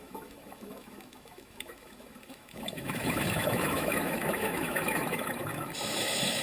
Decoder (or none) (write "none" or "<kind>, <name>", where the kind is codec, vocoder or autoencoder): autoencoder, DAC-VAE